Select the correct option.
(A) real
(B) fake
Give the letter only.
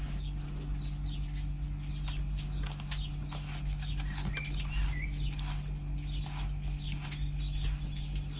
A